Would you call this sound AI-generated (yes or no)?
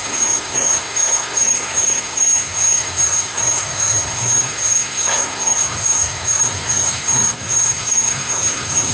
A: yes